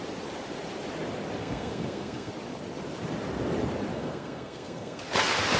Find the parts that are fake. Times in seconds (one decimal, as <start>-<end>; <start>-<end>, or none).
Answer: 1.4-2.3; 3.9-5.0